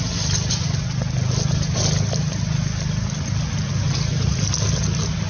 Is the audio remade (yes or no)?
no